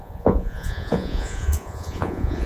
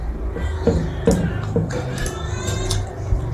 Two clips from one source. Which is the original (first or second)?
second